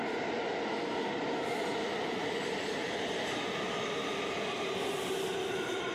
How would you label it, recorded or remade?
recorded